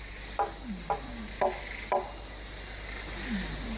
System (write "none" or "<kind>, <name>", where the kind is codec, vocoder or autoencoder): none